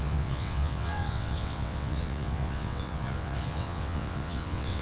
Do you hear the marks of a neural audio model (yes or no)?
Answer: yes